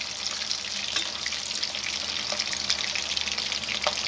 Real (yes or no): yes